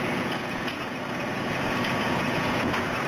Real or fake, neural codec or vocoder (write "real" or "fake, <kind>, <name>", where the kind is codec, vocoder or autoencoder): fake, vocoder, Vocos